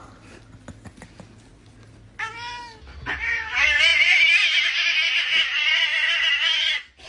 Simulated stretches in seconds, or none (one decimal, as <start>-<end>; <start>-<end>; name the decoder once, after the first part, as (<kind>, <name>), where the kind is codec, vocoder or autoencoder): none